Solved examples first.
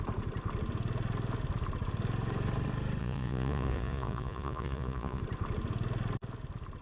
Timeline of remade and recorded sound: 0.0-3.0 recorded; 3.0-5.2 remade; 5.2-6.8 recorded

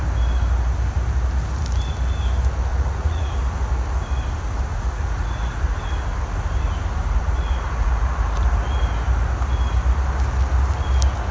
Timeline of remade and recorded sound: 0.0-2.7 recorded; 2.7-3.3 remade; 3.3-4.7 recorded; 4.7-5.6 remade; 5.6-7.2 recorded; 7.2-8.2 remade; 8.2-11.3 recorded

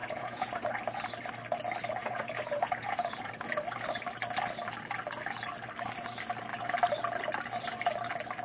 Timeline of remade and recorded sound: 0.0-0.7 remade; 0.7-2.0 recorded; 2.0-3.3 remade; 3.3-8.4 recorded

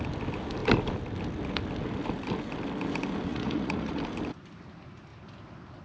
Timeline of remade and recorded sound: 0.0-3.3 recorded; 3.3-4.0 remade; 4.0-5.8 recorded